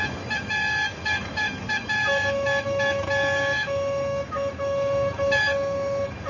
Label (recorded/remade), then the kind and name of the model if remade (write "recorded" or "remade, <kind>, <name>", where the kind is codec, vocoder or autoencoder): remade, autoencoder, DAC-VAE